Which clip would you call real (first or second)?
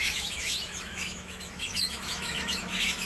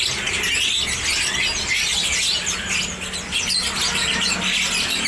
second